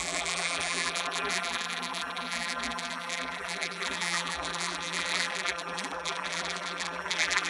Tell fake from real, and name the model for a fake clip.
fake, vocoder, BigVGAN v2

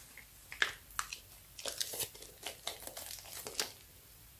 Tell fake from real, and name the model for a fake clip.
real